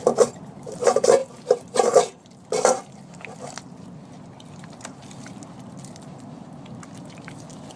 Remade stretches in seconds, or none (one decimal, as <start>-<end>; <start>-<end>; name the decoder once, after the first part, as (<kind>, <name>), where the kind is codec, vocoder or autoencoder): none